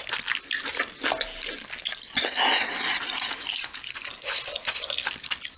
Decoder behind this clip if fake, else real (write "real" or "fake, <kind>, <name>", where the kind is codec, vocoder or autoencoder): real